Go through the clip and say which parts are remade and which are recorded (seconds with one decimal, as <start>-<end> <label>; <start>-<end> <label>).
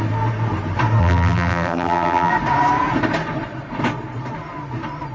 0.0-1.0 recorded; 1.0-2.3 remade; 2.3-5.1 recorded